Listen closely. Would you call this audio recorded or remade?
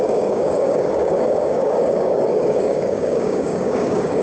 remade